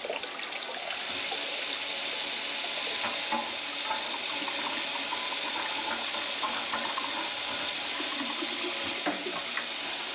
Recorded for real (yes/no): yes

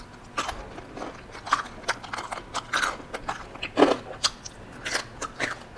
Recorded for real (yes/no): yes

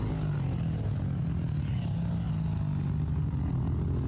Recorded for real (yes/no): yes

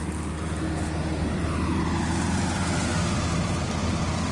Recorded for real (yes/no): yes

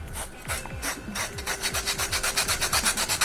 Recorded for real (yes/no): no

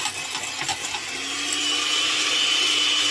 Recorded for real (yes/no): yes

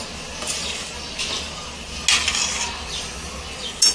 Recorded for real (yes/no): yes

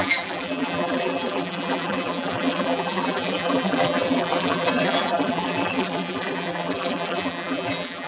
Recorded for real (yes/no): no